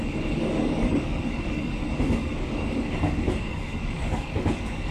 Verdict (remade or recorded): remade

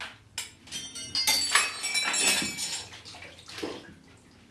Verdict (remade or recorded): recorded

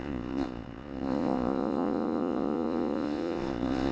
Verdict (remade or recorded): remade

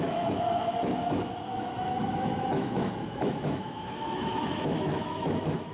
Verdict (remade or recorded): remade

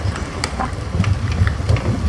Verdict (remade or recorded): recorded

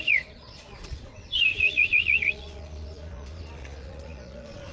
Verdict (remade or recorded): remade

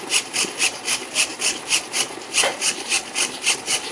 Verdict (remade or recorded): remade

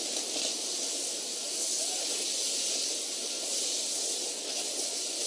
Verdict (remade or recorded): recorded